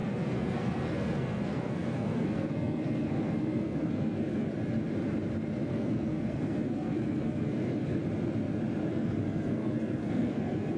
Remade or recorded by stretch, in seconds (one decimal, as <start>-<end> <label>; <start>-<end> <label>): 0.0-4.5 remade; 4.5-5.7 recorded; 5.7-8.0 remade; 8.0-8.9 recorded; 8.9-10.8 remade